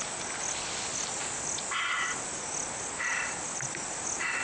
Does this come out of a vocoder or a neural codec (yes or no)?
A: no